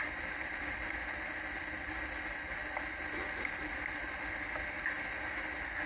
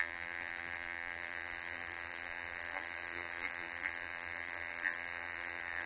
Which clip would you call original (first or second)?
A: first